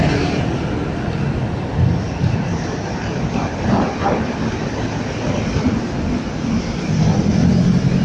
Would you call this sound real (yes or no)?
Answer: yes